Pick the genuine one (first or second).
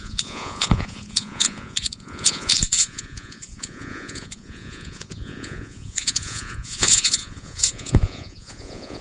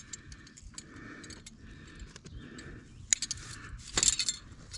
second